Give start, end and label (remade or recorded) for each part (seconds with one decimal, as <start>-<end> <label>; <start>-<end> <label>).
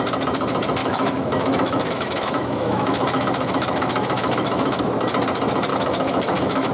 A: 0.0-0.8 recorded; 0.8-4.8 remade; 4.8-5.7 recorded; 5.7-6.7 remade